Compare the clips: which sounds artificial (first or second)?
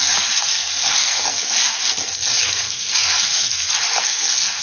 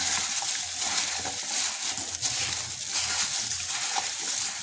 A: first